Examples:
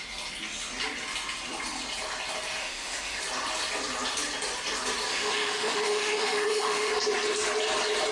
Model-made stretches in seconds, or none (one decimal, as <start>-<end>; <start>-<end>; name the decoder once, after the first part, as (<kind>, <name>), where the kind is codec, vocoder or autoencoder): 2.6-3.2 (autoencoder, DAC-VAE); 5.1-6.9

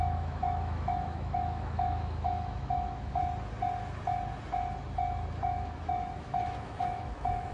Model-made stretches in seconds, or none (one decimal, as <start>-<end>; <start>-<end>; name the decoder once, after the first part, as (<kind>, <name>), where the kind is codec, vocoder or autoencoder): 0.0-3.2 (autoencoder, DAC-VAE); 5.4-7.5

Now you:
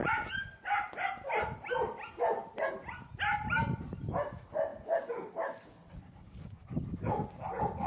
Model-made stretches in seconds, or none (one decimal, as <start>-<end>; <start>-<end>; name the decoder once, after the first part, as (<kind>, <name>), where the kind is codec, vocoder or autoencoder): none

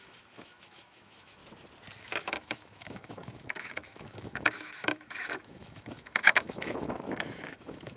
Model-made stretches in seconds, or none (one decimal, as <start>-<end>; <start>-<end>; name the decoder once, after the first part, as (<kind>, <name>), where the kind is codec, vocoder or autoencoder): 0.0-1.4 (autoencoder, DAC-VAE); 2.0-8.0

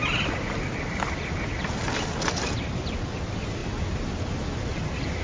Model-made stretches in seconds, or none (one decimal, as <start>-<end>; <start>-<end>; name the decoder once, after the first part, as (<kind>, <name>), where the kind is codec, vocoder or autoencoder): none

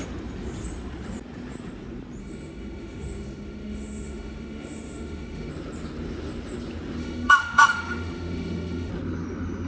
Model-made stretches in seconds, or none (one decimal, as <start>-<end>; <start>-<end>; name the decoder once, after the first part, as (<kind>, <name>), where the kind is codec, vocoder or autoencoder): 2.2-5.5 (autoencoder, DAC-VAE); 7.0-8.9

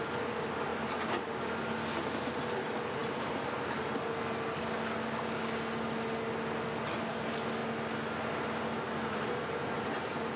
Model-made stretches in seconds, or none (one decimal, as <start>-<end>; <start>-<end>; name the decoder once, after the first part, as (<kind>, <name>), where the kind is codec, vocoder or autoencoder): none

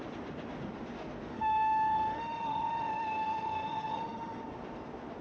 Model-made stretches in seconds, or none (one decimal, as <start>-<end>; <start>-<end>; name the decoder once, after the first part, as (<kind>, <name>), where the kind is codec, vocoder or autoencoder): 1.3-4.4 (autoencoder, DAC-VAE)